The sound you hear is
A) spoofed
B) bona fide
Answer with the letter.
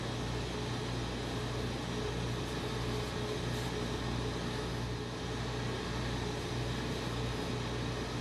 B